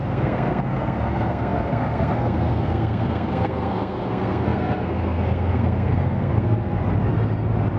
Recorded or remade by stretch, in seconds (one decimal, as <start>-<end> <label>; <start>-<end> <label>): 0.0-6.8 remade; 6.8-7.8 recorded